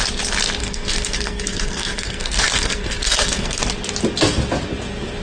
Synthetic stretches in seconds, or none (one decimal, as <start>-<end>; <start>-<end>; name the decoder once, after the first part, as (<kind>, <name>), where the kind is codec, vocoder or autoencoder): 0.6-3.6 (codec, SNAC)